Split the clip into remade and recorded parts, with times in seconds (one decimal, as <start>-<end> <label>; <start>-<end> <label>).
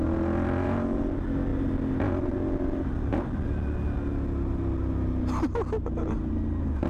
0.0-6.9 recorded